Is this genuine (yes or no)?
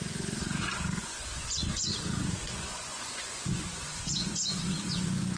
no